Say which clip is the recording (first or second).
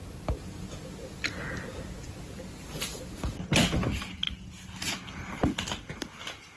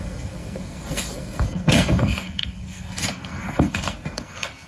first